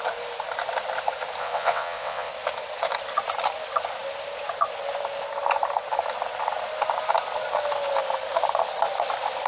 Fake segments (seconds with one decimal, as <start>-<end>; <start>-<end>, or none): 1.4-2.3